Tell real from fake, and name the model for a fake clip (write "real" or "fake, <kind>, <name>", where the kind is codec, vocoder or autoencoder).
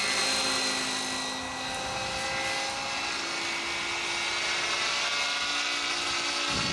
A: real